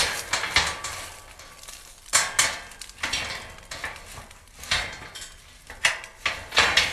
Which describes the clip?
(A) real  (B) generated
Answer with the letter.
A